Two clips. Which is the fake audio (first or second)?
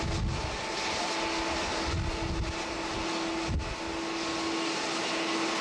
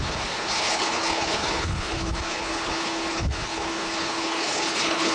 second